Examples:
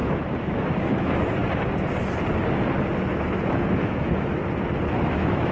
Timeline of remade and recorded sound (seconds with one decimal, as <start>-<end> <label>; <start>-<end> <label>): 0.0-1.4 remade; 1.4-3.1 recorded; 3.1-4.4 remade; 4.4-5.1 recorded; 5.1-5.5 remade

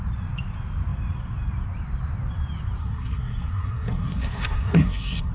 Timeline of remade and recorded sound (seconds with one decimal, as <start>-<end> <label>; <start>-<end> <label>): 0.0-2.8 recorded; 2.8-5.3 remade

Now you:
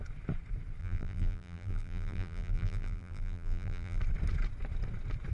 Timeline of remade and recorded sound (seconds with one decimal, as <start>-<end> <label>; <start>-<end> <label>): 0.0-0.8 recorded; 0.8-4.0 remade; 4.0-5.3 recorded

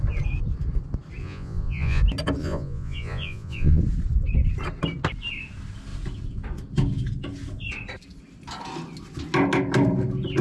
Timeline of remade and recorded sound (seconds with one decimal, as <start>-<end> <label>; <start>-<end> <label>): 0.0-1.2 recorded; 1.2-2.0 remade; 2.0-2.4 recorded; 2.4-3.8 remade; 3.8-10.4 recorded

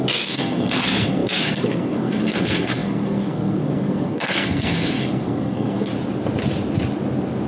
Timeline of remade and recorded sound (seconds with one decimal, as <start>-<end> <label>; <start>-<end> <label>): 0.0-5.9 remade; 5.9-7.5 recorded